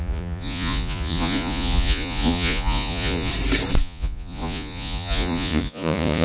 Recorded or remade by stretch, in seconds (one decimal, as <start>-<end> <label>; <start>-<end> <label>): 0.0-3.3 remade; 3.3-3.8 recorded; 3.8-6.2 remade